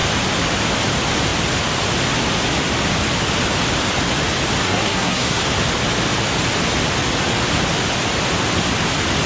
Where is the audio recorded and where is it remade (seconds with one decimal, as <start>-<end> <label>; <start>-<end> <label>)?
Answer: 0.0-4.6 recorded; 4.6-5.4 remade; 5.4-9.3 recorded